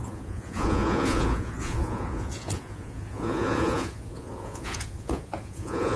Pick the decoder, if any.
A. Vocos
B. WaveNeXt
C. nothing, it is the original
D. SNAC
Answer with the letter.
A